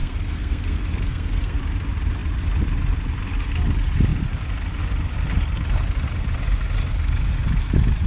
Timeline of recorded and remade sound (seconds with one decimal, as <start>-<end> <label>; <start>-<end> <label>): 0.0-1.6 remade; 1.6-8.1 recorded